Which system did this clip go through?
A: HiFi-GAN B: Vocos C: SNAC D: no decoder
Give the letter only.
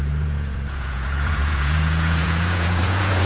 B